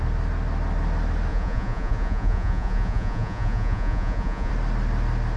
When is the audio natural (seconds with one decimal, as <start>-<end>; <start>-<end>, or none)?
0.0-1.3; 4.5-5.4